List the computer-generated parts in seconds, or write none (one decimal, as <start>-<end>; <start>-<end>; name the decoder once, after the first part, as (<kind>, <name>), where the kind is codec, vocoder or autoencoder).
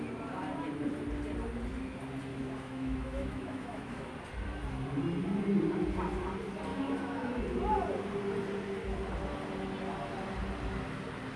2.3-4.1 (autoencoder, DAC-VAE); 6.7-7.4